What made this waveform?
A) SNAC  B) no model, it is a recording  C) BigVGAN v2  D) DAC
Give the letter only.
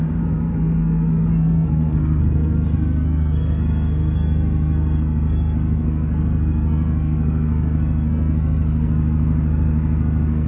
A